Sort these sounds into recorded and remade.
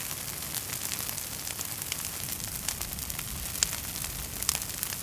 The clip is recorded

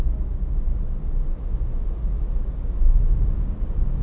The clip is recorded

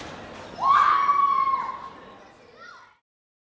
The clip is recorded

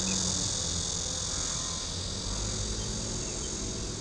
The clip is recorded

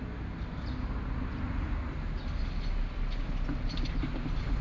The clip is recorded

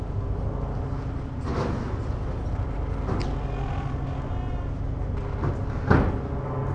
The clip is recorded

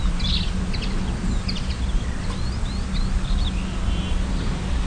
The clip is recorded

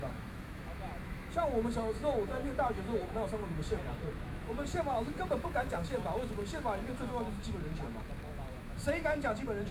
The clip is remade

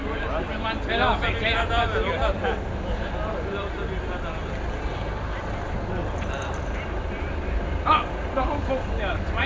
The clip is recorded